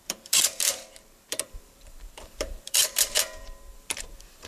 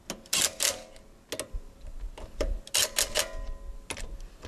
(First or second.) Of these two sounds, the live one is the second